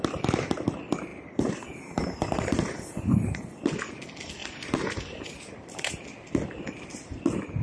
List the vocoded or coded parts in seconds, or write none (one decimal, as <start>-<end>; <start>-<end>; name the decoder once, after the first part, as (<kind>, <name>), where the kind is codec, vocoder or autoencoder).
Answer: 1.1-3.4 (vocoder, BigVGAN v2); 4.4-5.8